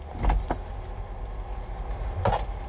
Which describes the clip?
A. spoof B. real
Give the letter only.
B